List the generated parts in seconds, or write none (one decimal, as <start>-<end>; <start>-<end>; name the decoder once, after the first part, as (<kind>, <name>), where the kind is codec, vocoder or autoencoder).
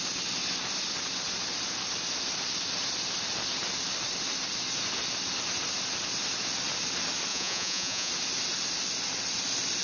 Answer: 7.3-8.1 (vocoder, Vocos)